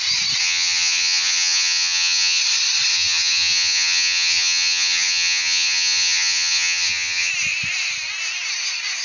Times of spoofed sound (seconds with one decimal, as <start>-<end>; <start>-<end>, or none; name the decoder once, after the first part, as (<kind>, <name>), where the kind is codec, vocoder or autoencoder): 0.4-2.4 (vocoder, HiFi-GAN); 2.9-7.3